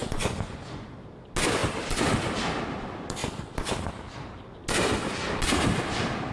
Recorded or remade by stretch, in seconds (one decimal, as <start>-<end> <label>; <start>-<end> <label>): 0.0-0.9 remade; 0.9-6.3 recorded